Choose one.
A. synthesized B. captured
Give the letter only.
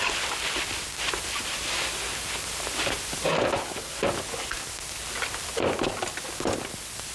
B